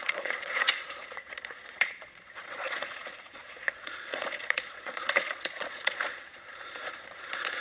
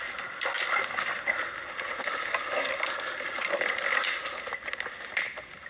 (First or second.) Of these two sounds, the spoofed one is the first